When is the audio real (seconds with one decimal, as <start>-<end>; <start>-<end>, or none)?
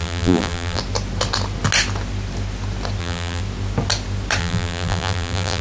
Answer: 0.8-3.0; 3.4-4.4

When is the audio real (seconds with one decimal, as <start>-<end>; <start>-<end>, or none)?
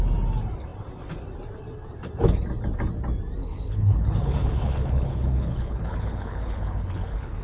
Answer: 0.0-3.4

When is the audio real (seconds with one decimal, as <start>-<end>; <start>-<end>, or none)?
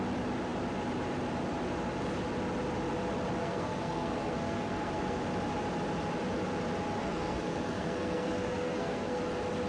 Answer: 0.0-3.4; 5.2-7.0; 9.2-9.7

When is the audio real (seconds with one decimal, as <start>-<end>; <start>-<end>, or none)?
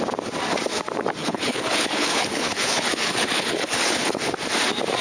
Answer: 0.0-1.2; 4.2-5.0